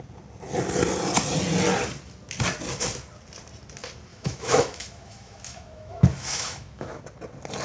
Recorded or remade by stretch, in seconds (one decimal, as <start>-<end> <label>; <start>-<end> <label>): 0.0-4.1 recorded; 4.1-7.0 remade; 7.0-7.6 recorded